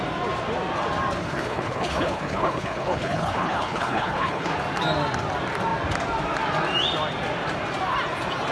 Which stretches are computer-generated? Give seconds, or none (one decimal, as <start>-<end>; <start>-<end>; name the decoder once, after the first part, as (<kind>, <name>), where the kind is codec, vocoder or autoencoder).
1.2-4.5 (codec, HILCodec)